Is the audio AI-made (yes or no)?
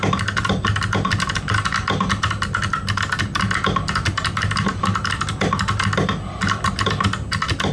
no